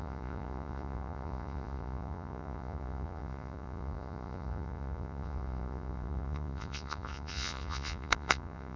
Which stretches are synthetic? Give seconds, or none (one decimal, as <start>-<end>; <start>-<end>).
0.0-8.8